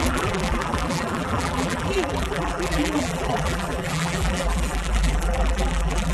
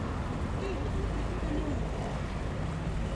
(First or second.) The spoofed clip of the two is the first